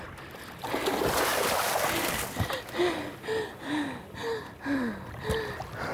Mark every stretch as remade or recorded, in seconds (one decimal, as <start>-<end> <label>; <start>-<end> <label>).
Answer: 0.0-1.3 recorded; 1.3-2.8 remade; 2.8-5.9 recorded